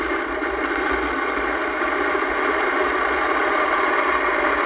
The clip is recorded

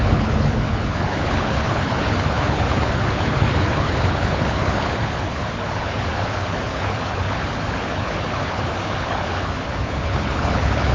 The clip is remade